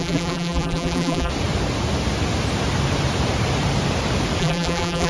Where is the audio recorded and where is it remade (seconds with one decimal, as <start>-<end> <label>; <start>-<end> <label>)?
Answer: 0.0-1.3 remade; 1.3-4.4 recorded; 4.4-5.1 remade